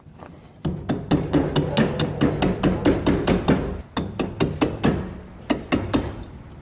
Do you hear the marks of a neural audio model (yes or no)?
no